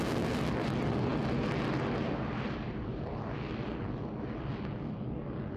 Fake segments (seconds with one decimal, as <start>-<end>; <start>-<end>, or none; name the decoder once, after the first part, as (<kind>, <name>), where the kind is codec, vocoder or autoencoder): none